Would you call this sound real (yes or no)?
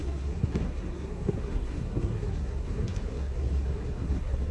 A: no